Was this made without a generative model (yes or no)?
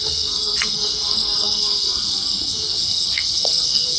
no